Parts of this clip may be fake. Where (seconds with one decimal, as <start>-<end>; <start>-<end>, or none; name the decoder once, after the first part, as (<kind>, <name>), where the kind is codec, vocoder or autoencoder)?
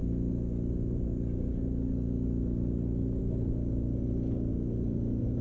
none